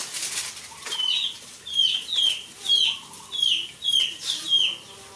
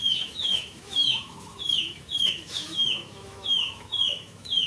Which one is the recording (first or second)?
first